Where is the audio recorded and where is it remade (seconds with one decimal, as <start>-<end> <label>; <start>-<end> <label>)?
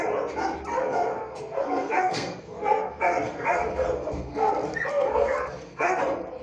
0.0-0.7 recorded; 0.7-4.5 remade; 4.5-4.9 recorded; 4.9-6.0 remade; 6.0-6.4 recorded